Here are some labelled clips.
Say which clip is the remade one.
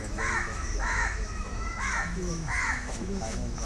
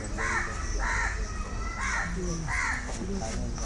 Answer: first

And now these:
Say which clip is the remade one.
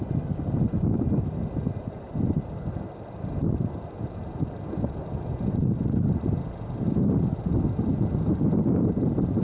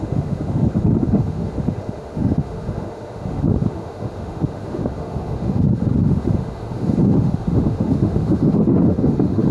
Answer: second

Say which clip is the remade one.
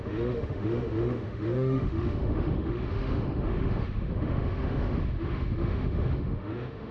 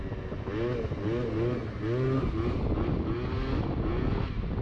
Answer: first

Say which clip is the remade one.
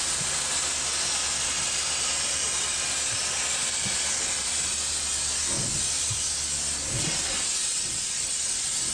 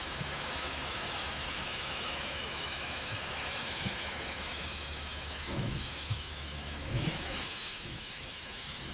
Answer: second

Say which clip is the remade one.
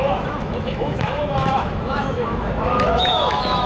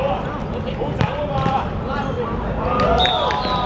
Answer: first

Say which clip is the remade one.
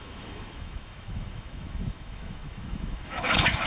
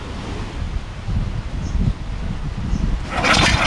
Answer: first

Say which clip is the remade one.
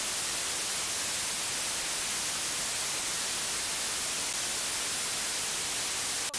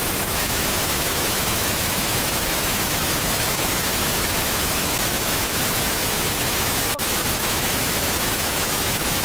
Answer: second